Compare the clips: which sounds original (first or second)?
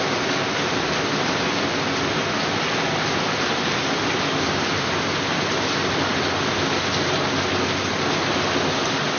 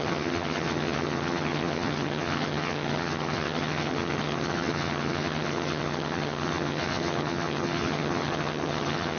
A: first